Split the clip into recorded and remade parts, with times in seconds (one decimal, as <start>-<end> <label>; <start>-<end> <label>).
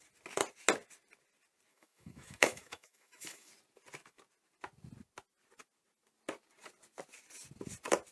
0.0-1.7 recorded; 1.7-3.5 remade; 3.5-8.1 recorded